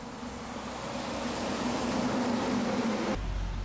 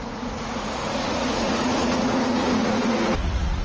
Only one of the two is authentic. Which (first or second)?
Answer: first